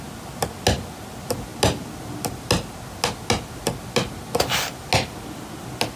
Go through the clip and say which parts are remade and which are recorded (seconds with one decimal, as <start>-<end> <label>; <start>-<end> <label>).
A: 0.0-6.0 recorded